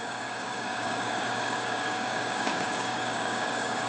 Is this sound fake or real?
fake